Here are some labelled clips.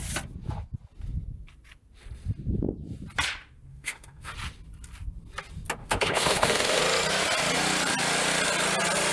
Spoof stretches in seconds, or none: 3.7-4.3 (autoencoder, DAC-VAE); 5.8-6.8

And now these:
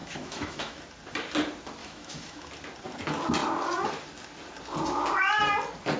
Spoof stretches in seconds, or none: 0.0-0.8 (autoencoder, DAC-VAE); 1.8-2.5

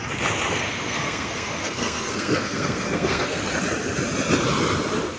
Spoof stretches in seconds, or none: 0.5-3.4 (codec, SNAC)

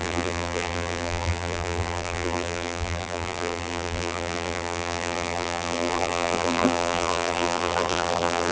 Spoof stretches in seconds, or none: 0.0-8.5 (vocoder, BigVGAN v2)

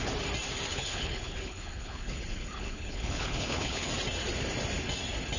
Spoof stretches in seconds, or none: 0.7-3.9 (codec, HILCodec)